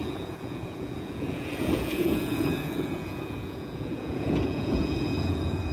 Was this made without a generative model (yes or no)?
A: no